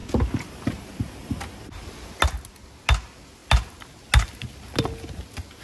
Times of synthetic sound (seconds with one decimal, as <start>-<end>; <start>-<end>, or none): none